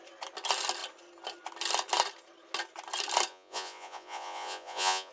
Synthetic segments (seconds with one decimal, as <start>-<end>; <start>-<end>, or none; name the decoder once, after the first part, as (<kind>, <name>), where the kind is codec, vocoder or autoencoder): 3.3-5.1 (vocoder, Vocos)